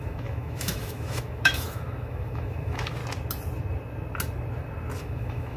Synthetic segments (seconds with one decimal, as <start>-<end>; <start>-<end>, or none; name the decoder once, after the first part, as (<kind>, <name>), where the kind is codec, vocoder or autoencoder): 0.0-3.0 (autoencoder, DAC-VAE); 5.0-5.6